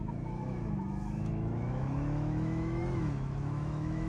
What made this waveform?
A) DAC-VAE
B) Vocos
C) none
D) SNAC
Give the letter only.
A